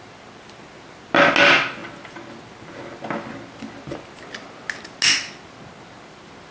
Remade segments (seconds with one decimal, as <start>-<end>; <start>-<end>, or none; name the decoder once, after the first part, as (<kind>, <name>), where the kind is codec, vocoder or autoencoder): none